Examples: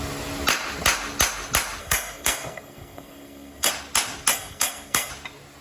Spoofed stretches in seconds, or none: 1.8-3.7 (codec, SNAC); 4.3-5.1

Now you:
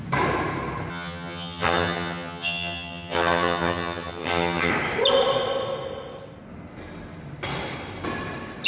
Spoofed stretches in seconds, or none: 0.9-4.7 (vocoder, HiFi-GAN)

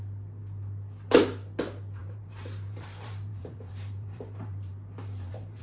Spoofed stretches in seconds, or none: 2.0-5.6 (vocoder, BigVGAN v2)

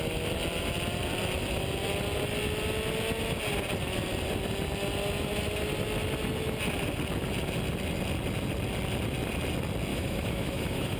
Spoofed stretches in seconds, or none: 9.9-11.0 (autoencoder, DAC-VAE)

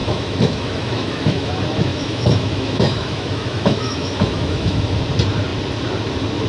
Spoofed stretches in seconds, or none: 0.0-1.5 (autoencoder, DAC-VAE); 1.9-5.0